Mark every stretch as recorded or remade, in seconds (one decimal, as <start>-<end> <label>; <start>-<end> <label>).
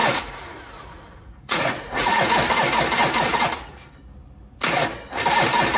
0.0-2.3 remade; 2.3-5.8 recorded